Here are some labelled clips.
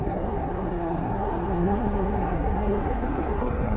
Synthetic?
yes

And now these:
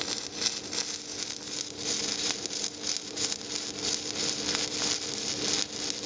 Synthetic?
no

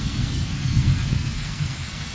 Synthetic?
yes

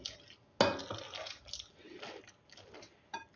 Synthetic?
no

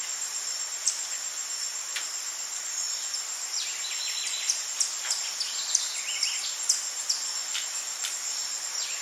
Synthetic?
no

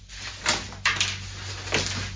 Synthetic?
no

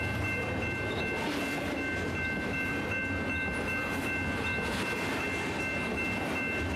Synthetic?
no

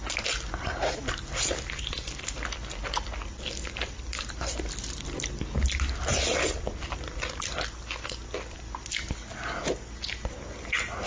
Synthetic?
no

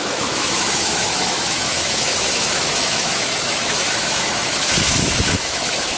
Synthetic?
yes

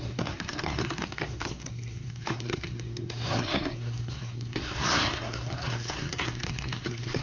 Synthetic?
yes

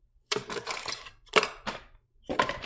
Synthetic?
yes